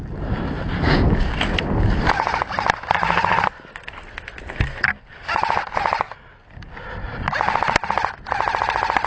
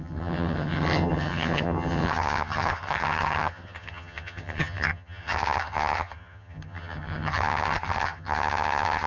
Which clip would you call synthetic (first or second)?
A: second